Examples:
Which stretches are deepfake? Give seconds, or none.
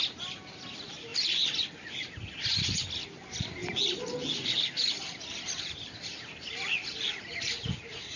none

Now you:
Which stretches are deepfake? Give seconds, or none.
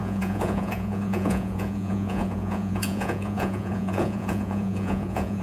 0.0-5.4 (vocoder, Vocos)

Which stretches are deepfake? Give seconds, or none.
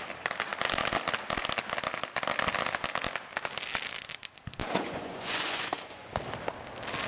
4.6-6.1 (vocoder, Vocos)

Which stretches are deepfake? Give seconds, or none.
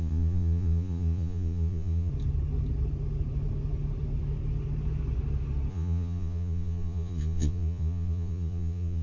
0.0-2.1 (vocoder, Vocos); 5.7-9.0